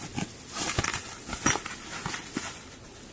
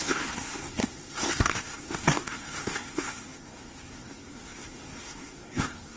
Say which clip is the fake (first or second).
second